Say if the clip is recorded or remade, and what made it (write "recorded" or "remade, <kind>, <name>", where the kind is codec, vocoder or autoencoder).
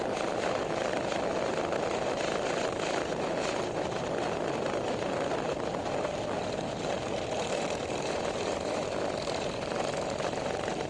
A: recorded